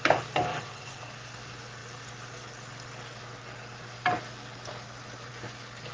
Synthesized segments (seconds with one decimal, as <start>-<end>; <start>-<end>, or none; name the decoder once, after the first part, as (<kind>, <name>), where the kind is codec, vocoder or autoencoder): 0.5-1.0 (vocoder, WaveNeXt)